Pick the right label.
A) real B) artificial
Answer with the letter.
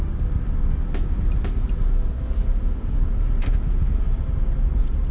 A